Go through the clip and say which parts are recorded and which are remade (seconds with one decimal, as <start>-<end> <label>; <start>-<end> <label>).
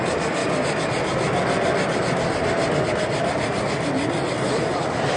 0.0-5.2 recorded